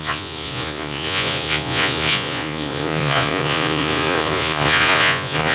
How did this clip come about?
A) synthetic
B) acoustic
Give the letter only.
A